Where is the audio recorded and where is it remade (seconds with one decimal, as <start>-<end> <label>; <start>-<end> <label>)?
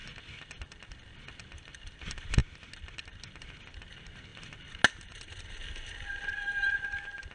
0.0-7.3 recorded